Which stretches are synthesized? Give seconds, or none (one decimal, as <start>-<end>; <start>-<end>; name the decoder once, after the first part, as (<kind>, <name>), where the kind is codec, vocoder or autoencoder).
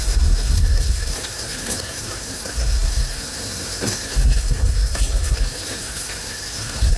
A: 0.0-7.0 (codec, SNAC)